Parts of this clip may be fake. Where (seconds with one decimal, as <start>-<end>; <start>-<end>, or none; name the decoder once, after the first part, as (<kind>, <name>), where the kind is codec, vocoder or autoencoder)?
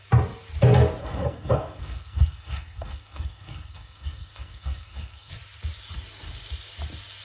1.0-5.3 (codec, SNAC)